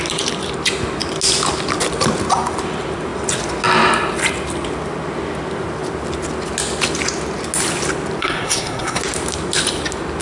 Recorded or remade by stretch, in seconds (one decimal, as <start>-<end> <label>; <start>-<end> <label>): 0.0-8.2 recorded; 8.2-9.0 remade; 9.0-10.2 recorded